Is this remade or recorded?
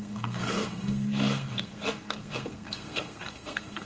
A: remade